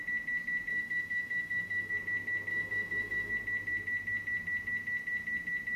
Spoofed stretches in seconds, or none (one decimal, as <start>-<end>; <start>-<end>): 0.7-1.9; 2.5-3.3